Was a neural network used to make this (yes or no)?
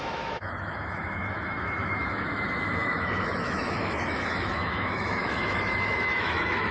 yes